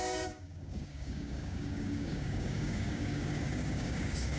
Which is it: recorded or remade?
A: remade